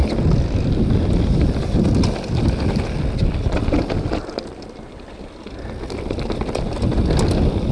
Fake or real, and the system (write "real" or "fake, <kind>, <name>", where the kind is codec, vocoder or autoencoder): real